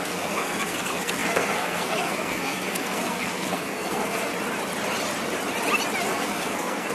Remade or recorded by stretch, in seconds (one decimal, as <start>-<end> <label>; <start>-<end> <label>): 0.0-4.3 remade; 4.3-6.1 recorded; 6.1-6.9 remade